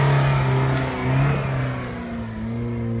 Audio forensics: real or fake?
real